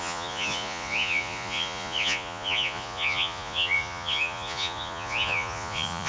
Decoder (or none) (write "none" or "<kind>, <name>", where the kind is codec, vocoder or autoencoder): vocoder, Vocos